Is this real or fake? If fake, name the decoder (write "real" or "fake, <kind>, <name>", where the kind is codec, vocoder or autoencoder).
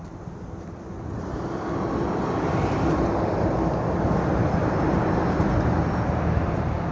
fake, vocoder, BigVGAN v2